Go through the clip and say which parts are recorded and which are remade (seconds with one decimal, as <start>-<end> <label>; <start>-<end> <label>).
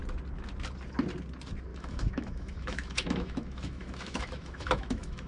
0.0-1.7 recorded; 1.7-5.3 remade